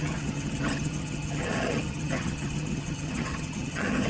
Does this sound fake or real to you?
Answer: fake